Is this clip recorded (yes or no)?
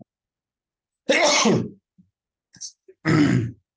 yes